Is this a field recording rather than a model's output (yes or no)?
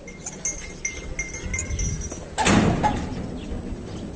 yes